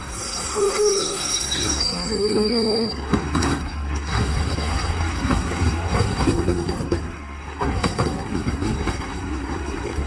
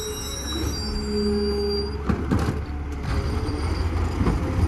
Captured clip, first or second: second